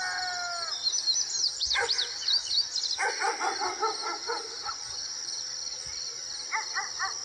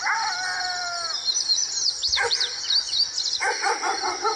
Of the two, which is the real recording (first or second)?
first